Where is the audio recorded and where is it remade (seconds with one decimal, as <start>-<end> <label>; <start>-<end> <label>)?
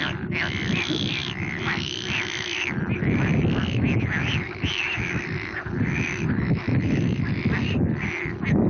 0.0-1.2 recorded; 1.2-1.8 remade; 1.8-8.7 recorded